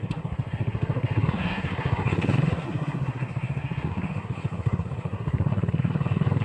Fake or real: fake